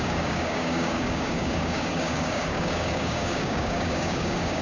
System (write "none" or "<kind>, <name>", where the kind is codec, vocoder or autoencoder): codec, DAC